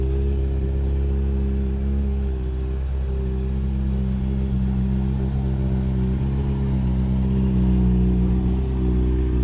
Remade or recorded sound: recorded